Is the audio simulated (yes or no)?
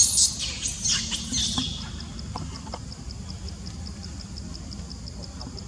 no